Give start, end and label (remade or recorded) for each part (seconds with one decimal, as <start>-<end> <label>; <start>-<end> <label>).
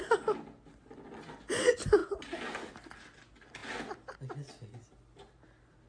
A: 0.0-5.9 recorded